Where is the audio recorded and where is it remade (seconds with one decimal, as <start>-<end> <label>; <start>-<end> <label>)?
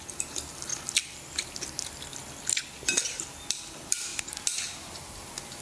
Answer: 0.0-0.7 remade; 0.7-3.2 recorded; 3.2-4.1 remade; 4.1-5.6 recorded